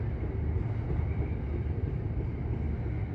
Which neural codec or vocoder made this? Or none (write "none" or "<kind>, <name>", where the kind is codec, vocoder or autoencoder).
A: none